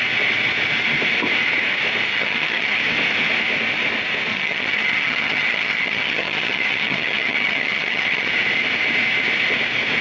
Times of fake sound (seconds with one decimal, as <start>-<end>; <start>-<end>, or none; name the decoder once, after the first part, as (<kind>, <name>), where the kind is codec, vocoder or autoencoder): 2.1-2.8 (vocoder, HiFi-GAN); 4.3-8.3